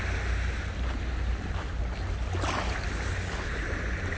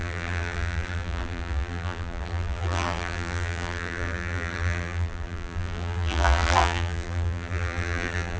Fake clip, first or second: second